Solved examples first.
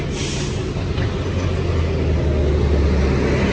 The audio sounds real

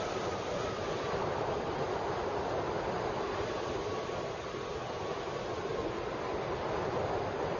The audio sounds real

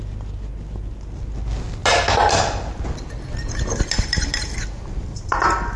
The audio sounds real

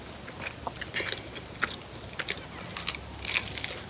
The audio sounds real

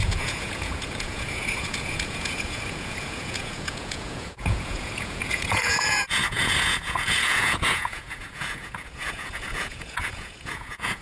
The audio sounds fake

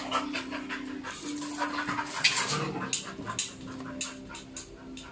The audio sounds real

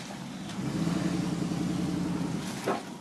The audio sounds real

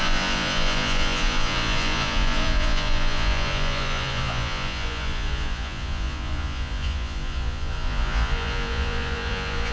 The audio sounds fake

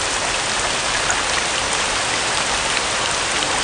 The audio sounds real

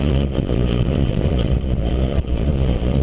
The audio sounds fake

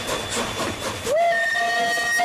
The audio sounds real